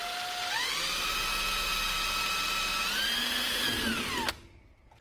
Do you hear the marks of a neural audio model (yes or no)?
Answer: no